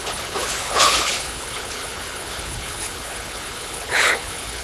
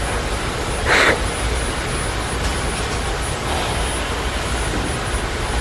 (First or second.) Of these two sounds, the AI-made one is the first